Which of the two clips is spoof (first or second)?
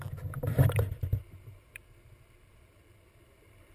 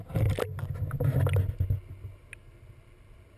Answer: first